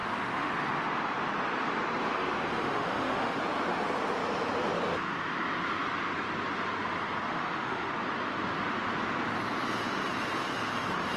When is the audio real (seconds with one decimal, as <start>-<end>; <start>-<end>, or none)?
0.5-2.5; 3.4-7.3; 7.9-11.2